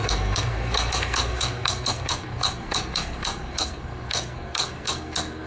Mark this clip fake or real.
fake